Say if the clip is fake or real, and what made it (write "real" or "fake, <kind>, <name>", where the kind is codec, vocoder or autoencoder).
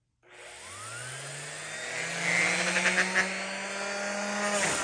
real